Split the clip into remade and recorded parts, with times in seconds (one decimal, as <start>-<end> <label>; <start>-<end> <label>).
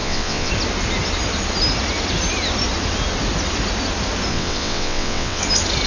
0.0-0.5 remade; 0.5-4.3 recorded; 4.3-5.4 remade; 5.4-5.9 recorded